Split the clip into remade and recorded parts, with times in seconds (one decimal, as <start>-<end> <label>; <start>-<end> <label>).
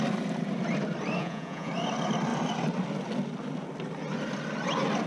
0.0-1.2 recorded; 1.2-1.7 remade; 1.7-5.1 recorded